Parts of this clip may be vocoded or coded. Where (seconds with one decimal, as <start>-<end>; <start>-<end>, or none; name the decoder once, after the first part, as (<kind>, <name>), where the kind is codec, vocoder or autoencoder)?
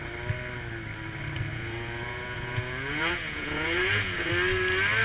1.5-4.3 (vocoder, Vocos)